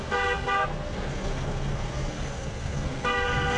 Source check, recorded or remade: remade